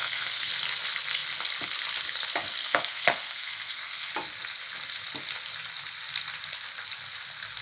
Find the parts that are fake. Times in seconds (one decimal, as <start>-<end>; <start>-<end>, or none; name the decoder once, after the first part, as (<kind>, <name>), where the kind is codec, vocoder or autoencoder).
0.0-0.5 (codec, SNAC); 2.6-4.1